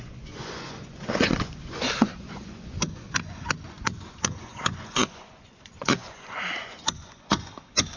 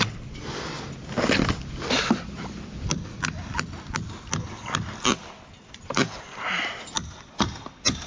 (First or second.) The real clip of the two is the second